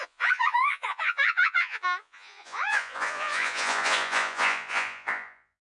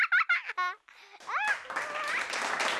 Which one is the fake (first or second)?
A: first